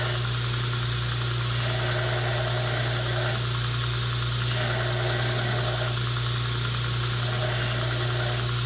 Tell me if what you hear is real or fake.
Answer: real